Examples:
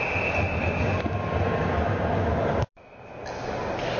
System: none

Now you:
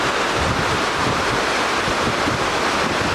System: none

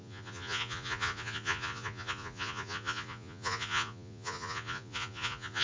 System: vocoder, Vocos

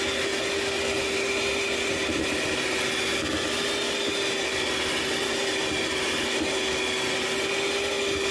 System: none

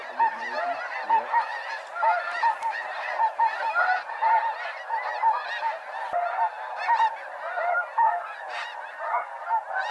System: none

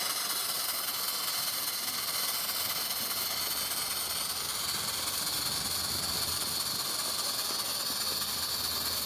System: none